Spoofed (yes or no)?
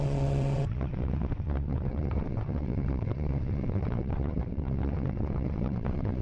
yes